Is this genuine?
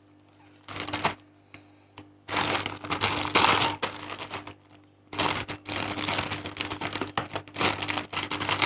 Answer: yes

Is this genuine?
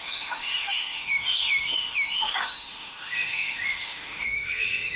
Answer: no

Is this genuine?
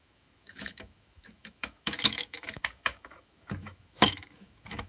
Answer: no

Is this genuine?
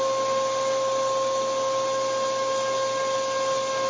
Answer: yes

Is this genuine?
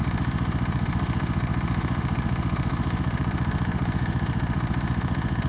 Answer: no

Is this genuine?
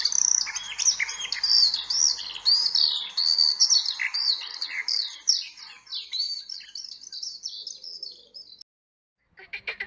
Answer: yes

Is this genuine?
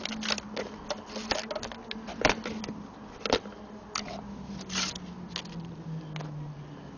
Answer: yes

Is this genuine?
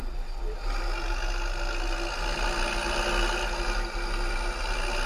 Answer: yes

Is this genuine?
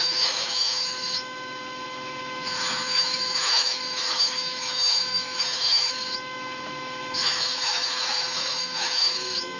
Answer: no